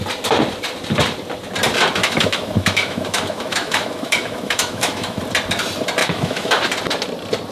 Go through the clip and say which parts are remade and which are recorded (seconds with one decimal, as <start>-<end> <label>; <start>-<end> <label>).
0.0-2.0 recorded; 2.0-5.2 remade; 5.2-6.0 recorded; 6.0-6.6 remade; 6.6-7.5 recorded